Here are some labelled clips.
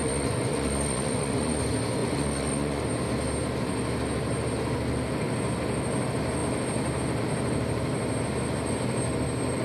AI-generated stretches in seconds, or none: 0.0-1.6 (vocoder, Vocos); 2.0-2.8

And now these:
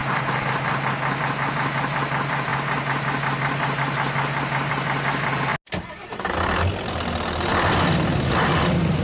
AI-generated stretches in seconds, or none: none

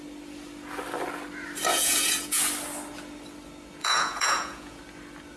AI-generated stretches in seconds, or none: 1.7-2.5 (vocoder, Vocos); 3.8-4.8

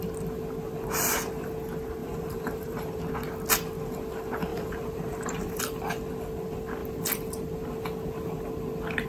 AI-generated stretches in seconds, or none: 2.0-3.0 (vocoder, BigVGAN v2); 4.5-5.6